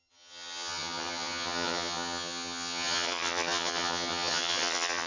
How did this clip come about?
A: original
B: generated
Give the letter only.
B